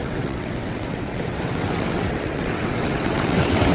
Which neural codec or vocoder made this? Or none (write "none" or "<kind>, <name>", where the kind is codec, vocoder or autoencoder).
vocoder, WaveNeXt